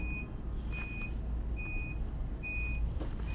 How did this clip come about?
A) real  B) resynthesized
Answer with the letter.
A